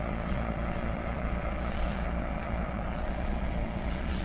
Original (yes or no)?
no